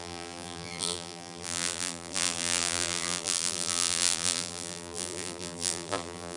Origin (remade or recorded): remade